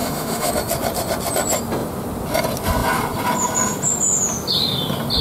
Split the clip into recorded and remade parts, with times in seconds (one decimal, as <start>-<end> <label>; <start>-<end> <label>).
0.0-0.5 remade; 0.5-5.2 recorded